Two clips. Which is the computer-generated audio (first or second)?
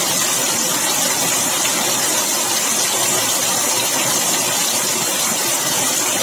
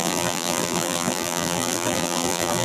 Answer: second